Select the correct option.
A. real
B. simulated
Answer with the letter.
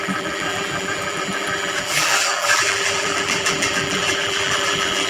B